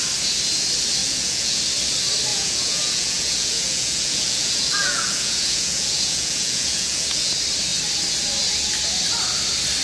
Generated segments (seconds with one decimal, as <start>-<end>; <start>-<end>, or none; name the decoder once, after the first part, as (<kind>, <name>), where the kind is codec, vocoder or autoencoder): 1.0-1.6 (vocoder, Vocos); 2.3-7.3